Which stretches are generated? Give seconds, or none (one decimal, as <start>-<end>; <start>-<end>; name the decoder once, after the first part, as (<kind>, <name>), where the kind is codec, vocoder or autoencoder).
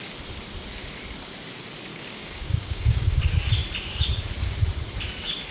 1.9-3.2 (codec, DAC)